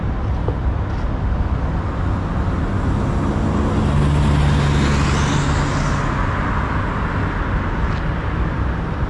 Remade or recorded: recorded